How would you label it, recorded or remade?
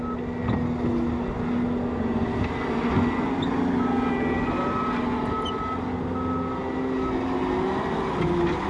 recorded